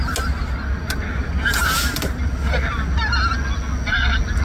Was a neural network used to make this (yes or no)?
no